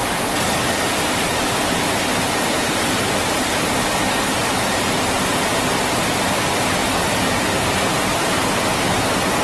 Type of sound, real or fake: real